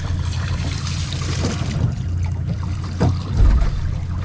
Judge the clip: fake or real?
fake